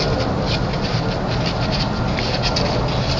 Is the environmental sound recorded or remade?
recorded